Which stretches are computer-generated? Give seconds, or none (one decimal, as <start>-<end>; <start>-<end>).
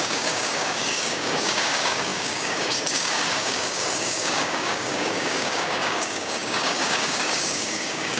0.0-8.2